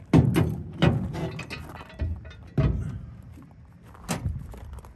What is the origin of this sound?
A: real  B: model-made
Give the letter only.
A